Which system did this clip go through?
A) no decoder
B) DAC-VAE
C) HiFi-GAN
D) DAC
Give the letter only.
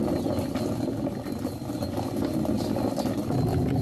A